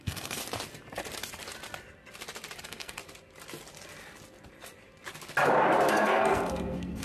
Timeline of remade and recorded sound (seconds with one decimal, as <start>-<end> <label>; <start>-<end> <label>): 0.0-0.4 remade; 0.4-2.6 recorded; 2.6-3.0 remade; 3.0-5.9 recorded; 5.9-7.0 remade